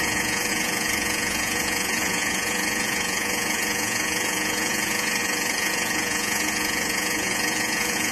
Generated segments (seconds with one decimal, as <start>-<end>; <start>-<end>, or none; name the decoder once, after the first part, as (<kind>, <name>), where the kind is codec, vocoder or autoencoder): 0.0-8.1 (vocoder, Vocos)